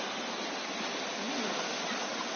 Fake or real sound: real